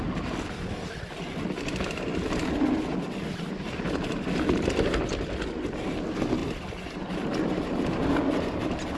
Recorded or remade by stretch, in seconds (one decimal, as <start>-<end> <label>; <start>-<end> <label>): 0.0-9.0 recorded